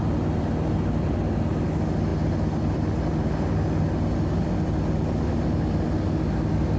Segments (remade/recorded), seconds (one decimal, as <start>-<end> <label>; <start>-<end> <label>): 0.0-6.8 recorded